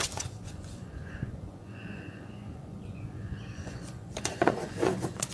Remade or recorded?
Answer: remade